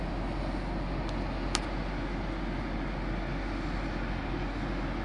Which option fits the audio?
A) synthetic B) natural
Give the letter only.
B